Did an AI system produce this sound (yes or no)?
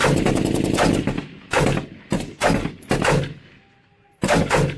no